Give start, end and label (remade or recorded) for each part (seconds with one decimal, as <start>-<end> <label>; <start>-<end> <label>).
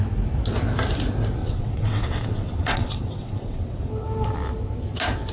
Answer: 0.0-1.4 recorded; 1.4-3.9 remade; 3.9-5.3 recorded